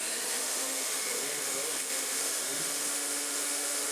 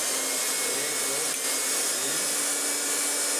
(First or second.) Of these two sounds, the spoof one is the first